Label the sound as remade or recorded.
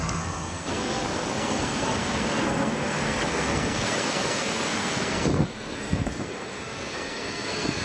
remade